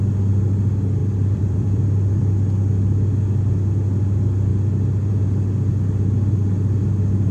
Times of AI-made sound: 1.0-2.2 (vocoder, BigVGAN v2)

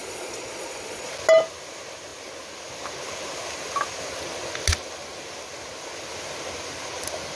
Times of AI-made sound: 0.0-1.1 (vocoder, Vocos)